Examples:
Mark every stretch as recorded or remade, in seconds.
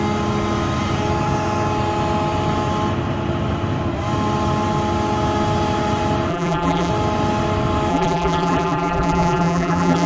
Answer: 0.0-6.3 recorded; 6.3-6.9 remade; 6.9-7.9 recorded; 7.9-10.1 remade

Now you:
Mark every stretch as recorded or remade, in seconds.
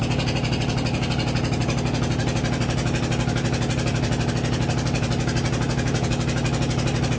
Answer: 0.0-7.2 recorded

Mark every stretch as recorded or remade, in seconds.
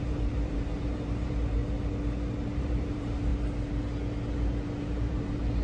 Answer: 0.0-1.6 remade; 1.6-2.6 recorded; 2.6-3.3 remade; 3.3-4.8 recorded; 4.8-5.6 remade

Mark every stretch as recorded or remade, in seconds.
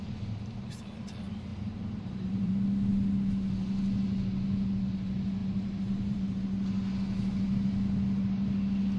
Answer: 0.0-1.5 recorded; 1.5-2.5 remade; 2.5-5.4 recorded; 5.4-6.3 remade; 6.3-9.0 recorded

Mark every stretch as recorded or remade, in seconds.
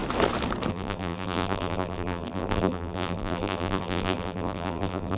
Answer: 0.0-0.7 recorded; 0.7-5.2 remade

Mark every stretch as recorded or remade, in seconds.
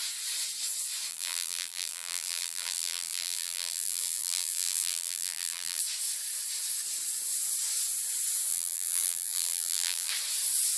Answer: 0.0-1.1 recorded; 1.1-5.8 remade; 5.8-8.5 recorded; 8.5-10.1 remade; 10.1-10.8 recorded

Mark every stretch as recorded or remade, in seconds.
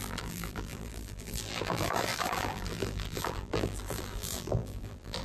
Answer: 0.0-5.2 remade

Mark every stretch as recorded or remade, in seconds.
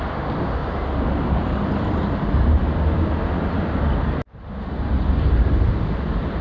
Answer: 0.0-0.6 recorded; 0.6-3.0 remade; 3.0-6.4 recorded